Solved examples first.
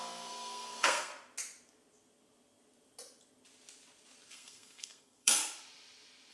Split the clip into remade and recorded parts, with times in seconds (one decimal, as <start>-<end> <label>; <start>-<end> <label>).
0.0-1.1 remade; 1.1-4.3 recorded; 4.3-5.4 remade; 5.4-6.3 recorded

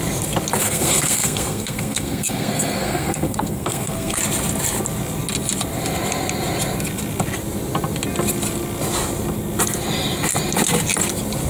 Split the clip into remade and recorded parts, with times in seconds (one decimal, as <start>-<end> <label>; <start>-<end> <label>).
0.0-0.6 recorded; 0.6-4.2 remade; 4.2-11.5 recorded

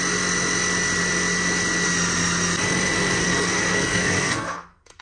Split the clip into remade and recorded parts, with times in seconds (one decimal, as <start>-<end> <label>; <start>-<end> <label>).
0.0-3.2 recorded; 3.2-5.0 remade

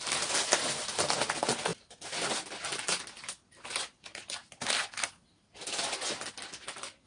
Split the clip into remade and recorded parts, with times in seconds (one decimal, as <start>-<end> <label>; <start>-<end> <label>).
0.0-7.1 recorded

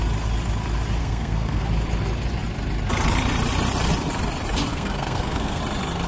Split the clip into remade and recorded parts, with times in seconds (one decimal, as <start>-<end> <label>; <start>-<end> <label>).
0.0-1.0 recorded; 1.0-1.6 remade; 1.6-4.7 recorded; 4.7-5.6 remade; 5.6-6.1 recorded

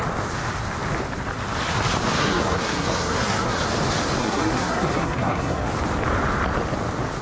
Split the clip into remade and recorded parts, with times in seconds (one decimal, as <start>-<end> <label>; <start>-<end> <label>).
0.0-2.2 recorded; 2.2-3.6 remade; 3.6-4.2 recorded; 4.2-5.7 remade; 5.7-7.2 recorded